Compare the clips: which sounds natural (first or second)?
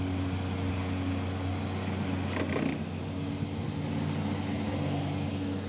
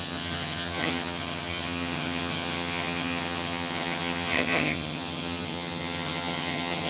first